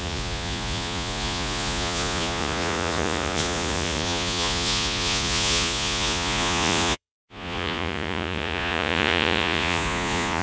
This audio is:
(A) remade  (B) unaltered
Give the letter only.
A